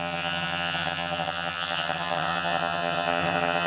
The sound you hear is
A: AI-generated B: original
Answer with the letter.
A